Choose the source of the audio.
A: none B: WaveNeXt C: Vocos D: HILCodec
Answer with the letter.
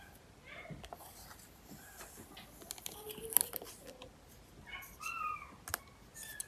A